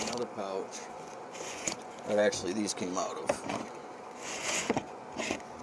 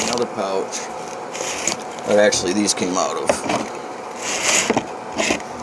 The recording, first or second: second